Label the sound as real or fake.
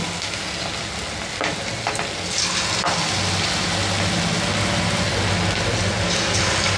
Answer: real